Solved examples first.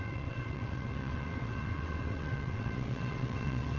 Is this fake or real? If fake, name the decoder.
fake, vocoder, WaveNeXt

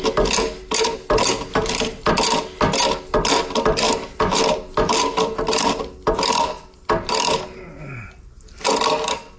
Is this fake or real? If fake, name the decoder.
real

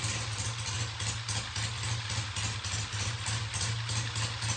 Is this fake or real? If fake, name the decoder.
real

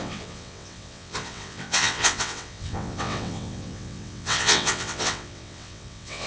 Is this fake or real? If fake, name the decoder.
fake, vocoder, WaveNeXt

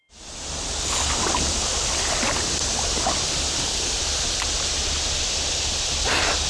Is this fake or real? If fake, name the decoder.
real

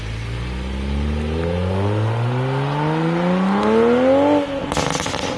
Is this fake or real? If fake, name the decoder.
real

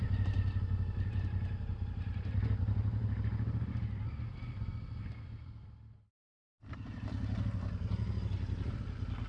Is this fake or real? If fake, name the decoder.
real